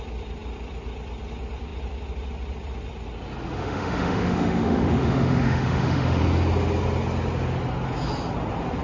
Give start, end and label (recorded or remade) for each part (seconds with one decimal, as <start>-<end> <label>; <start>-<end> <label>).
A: 0.0-3.6 recorded; 3.6-6.2 remade; 6.2-8.8 recorded